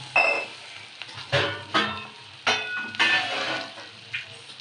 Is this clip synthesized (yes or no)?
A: no